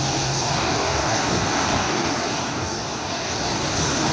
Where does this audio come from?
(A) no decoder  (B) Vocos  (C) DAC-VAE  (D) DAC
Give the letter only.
D